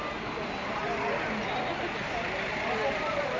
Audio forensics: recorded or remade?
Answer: recorded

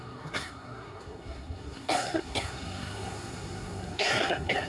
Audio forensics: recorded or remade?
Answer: remade